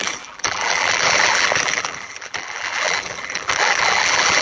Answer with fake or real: fake